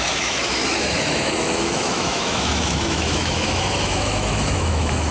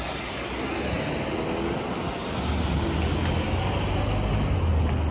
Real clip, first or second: second